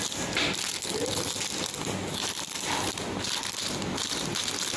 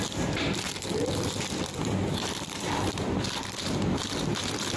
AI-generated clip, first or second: second